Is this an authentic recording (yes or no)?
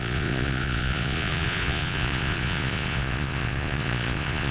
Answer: no